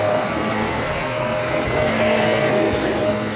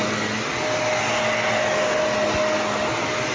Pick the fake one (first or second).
first